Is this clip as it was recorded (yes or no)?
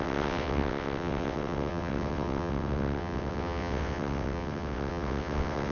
no